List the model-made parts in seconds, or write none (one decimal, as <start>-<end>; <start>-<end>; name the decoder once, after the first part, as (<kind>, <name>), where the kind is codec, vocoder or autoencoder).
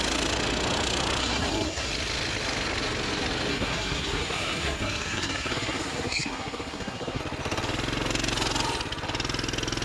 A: 1.2-1.9 (codec, SNAC); 3.5-7.2